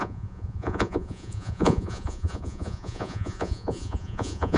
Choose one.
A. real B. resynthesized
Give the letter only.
B